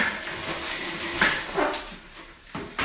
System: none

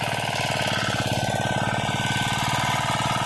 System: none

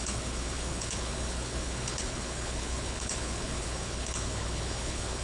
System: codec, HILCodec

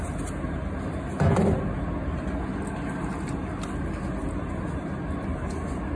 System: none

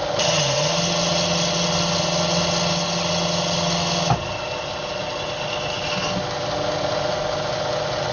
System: none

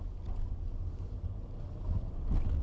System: none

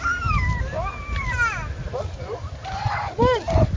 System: none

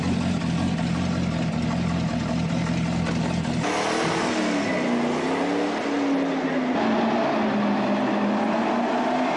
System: none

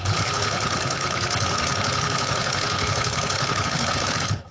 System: codec, HILCodec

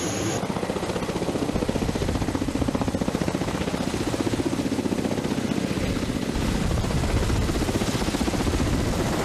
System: none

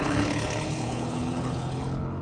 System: codec, HILCodec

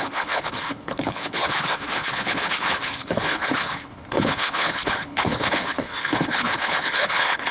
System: codec, HILCodec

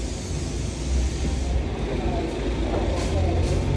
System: none